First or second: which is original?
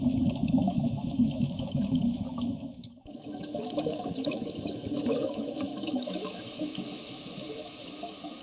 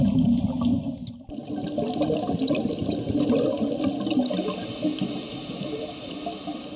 second